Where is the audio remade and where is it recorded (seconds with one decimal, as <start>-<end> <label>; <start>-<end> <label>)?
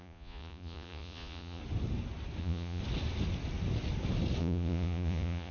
0.0-1.6 remade; 1.6-2.4 recorded; 2.4-2.8 remade; 2.8-4.4 recorded; 4.4-5.5 remade